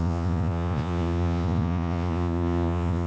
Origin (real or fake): fake